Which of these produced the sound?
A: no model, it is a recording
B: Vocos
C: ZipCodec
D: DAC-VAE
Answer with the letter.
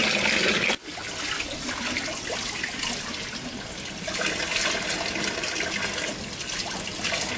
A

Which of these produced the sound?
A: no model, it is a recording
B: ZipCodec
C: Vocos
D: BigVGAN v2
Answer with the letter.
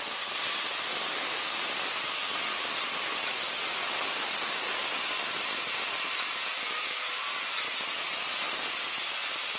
A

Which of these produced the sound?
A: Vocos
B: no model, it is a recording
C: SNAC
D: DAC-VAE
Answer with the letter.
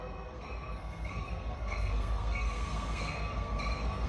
C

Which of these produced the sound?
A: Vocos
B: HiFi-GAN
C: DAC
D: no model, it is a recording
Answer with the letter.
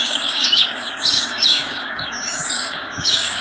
C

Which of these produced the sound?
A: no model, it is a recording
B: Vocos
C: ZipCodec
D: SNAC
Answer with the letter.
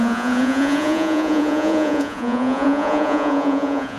B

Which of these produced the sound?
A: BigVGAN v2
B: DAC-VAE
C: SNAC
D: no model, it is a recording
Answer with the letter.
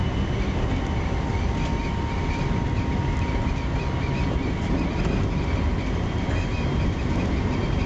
D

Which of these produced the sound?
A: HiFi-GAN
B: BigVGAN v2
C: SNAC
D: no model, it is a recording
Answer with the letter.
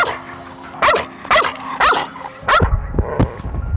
D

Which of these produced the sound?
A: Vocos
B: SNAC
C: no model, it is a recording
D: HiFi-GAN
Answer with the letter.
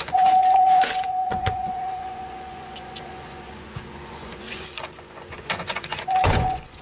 A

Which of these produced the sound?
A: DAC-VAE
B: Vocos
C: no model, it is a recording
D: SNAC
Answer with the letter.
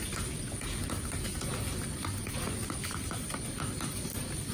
C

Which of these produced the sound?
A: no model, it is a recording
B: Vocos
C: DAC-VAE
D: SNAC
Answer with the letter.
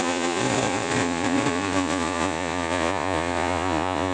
B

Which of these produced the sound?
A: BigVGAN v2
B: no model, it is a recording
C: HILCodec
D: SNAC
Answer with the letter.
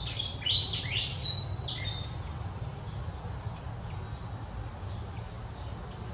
B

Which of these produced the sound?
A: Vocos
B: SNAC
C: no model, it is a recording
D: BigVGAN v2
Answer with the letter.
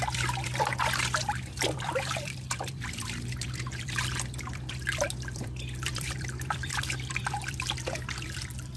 D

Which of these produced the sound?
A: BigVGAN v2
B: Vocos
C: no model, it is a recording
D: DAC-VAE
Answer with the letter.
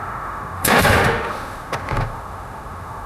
D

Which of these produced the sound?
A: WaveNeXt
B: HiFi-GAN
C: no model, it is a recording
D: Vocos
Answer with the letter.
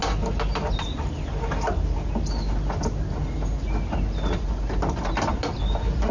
C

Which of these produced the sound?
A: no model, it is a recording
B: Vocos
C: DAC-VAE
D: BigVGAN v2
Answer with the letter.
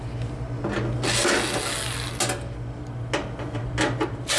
A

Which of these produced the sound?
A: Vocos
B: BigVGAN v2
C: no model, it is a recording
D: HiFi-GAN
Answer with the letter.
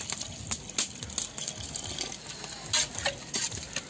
C